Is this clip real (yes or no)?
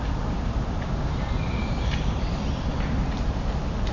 yes